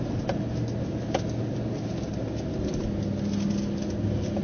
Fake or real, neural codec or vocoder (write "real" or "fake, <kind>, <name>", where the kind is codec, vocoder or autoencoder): real